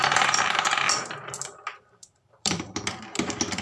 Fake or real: fake